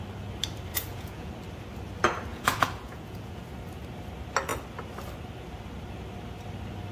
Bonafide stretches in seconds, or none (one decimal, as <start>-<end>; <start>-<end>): 0.0-0.7; 1.3-2.3; 3.4-6.9